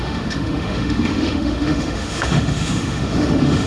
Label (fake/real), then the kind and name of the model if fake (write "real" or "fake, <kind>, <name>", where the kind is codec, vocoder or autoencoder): fake, autoencoder, DAC-VAE